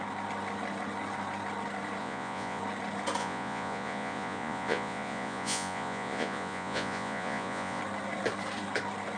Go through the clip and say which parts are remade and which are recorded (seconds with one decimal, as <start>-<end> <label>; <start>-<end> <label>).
0.0-2.0 recorded; 2.0-2.6 remade; 2.6-3.2 recorded; 3.2-7.8 remade; 7.8-9.2 recorded